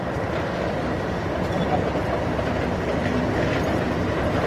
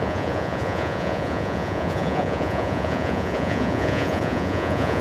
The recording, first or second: first